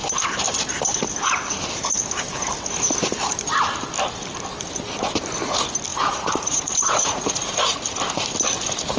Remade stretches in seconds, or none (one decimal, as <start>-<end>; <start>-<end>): 5.9-7.6